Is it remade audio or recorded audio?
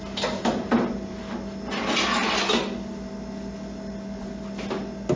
recorded